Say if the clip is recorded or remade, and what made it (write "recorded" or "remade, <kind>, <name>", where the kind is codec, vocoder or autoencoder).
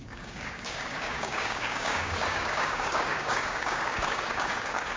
remade, codec, DAC